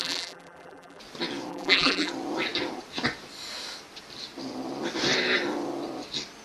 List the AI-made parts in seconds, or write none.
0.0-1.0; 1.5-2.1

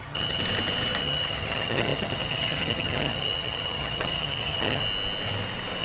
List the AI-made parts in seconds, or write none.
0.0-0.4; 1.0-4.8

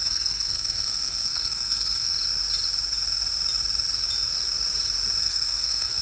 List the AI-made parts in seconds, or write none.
0.0-2.1; 5.2-6.0